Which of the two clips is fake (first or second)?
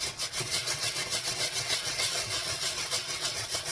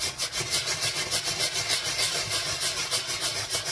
first